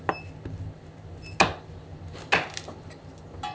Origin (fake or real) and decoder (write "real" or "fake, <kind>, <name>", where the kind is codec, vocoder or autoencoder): real